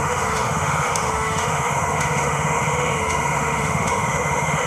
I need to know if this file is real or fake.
fake